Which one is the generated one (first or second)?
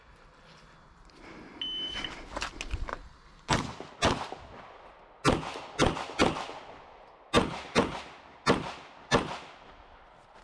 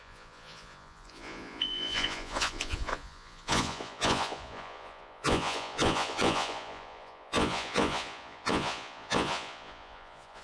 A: second